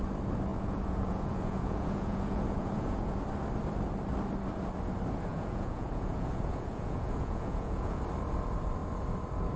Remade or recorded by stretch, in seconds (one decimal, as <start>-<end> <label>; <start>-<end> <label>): 0.0-0.5 recorded; 0.5-3.2 remade; 3.2-5.3 recorded; 5.3-8.0 remade; 8.0-9.6 recorded